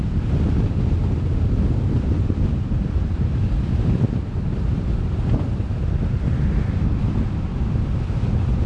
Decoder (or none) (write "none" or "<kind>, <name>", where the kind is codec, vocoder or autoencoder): vocoder, BigVGAN v2